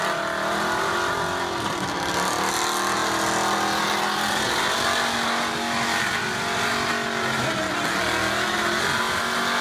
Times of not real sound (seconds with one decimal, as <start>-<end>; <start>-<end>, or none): none